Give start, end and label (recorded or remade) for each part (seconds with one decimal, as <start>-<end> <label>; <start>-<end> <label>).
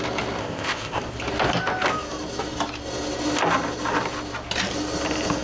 0.0-0.4 recorded; 0.4-1.0 remade; 1.0-5.4 recorded